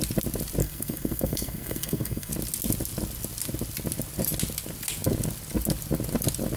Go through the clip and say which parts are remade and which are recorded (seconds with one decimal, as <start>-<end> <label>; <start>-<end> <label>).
0.0-0.6 recorded; 0.6-2.3 remade; 2.3-6.6 recorded